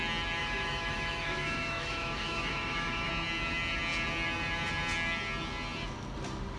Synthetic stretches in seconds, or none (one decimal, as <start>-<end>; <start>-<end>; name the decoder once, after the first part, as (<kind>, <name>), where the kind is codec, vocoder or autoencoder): 0.4-3.1 (autoencoder, DAC-VAE)